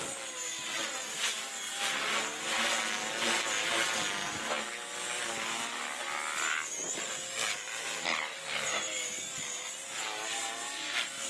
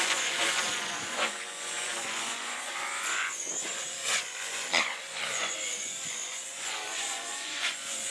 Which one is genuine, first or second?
first